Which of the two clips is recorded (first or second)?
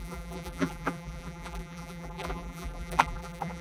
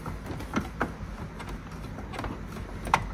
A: second